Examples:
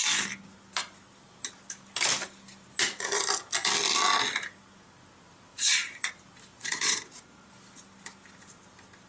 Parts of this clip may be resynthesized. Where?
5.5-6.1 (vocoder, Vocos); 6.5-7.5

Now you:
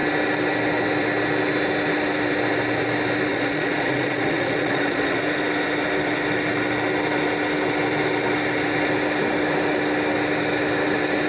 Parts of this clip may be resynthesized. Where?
3.3-5.2 (vocoder, Vocos)

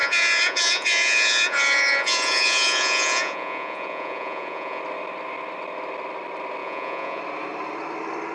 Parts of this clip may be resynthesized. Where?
0.0-4.8 (vocoder, Vocos); 6.6-7.2

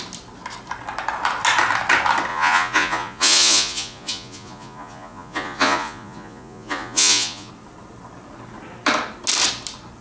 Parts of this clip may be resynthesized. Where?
2.3-7.5 (vocoder, Vocos)